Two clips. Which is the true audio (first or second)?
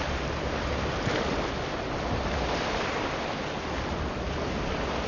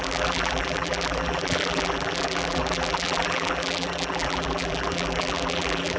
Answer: first